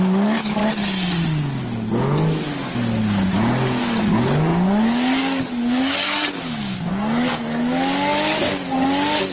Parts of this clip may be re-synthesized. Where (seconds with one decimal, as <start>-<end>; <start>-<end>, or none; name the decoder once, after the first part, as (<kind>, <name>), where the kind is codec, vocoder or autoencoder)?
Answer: 0.0-0.6 (codec, DAC); 4.0-9.3